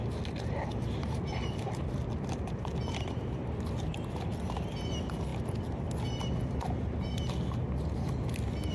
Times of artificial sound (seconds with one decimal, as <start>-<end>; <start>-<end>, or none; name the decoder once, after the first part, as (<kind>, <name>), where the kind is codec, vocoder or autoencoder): none